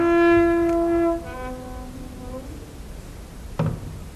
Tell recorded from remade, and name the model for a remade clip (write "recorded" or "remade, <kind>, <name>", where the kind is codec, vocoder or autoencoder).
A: recorded